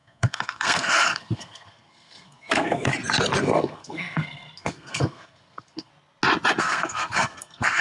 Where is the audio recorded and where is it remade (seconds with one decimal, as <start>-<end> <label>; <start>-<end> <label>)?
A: 0.0-2.9 remade; 2.9-3.4 recorded; 3.4-5.9 remade; 5.9-6.6 recorded; 6.6-7.8 remade